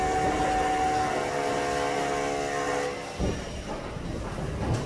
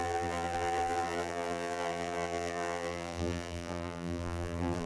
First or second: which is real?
first